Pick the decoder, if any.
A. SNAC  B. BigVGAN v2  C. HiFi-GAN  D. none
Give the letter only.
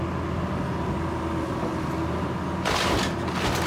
D